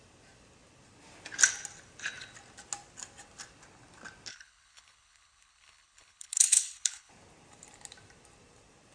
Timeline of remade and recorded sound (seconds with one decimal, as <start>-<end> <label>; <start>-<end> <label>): 0.0-4.3 recorded; 4.3-7.1 remade; 7.1-8.9 recorded

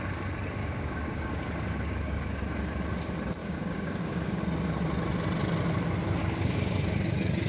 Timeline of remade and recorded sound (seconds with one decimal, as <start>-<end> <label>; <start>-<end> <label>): 0.0-0.6 recorded; 0.6-2.4 remade; 2.4-3.4 recorded; 3.4-4.4 remade; 4.4-6.2 recorded; 6.2-7.1 remade; 7.1-7.5 recorded

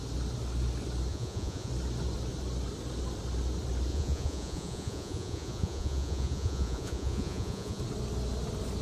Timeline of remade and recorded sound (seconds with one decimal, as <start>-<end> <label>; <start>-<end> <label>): 0.0-1.1 recorded; 1.1-1.7 remade; 1.7-3.9 recorded; 3.9-7.8 remade; 7.8-8.8 recorded